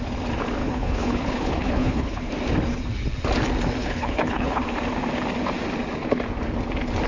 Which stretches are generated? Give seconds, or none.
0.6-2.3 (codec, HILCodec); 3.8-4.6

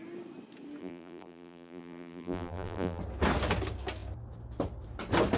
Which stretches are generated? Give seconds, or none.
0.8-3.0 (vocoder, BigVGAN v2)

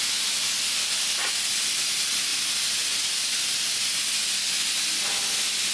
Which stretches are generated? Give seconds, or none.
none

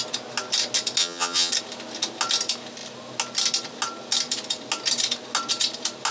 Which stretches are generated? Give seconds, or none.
1.0-1.5 (vocoder, HiFi-GAN)

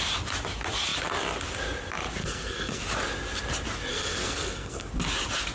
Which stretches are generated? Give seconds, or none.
2.2-2.8 (codec, SNAC); 3.9-4.9

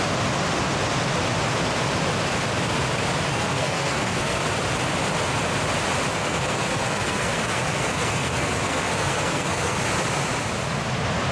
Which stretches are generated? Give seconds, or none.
3.3-4.4 (codec, SNAC); 6.1-9.8

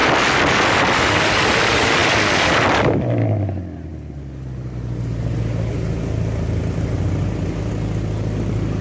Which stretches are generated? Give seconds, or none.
none